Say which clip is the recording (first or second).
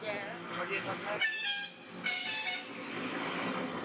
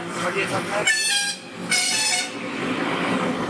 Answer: first